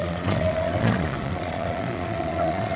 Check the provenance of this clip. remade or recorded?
remade